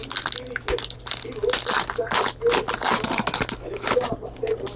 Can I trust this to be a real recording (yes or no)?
yes